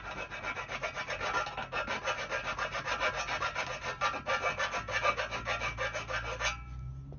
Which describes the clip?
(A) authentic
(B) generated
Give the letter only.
A